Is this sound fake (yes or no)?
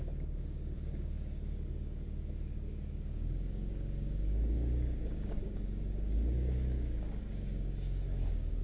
yes